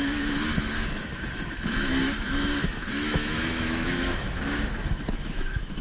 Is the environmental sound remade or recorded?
remade